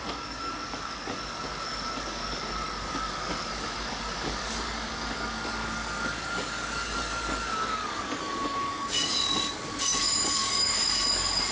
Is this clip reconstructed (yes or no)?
yes